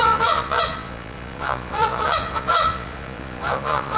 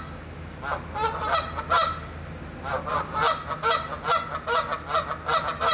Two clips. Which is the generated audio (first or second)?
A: first